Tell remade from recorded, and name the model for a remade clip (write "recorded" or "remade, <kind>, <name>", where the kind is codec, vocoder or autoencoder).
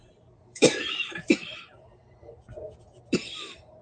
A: remade, vocoder, BigVGAN v2